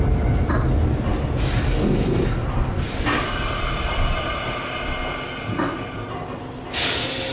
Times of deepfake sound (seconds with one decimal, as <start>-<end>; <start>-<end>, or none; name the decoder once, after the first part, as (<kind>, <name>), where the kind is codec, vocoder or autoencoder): none